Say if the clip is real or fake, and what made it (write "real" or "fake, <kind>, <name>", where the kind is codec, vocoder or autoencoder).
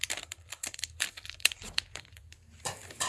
fake, vocoder, BigVGAN v2